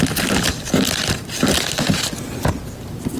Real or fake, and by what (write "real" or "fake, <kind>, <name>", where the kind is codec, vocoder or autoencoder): real